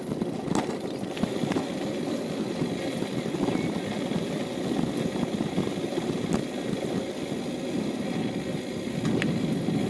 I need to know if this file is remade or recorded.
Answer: recorded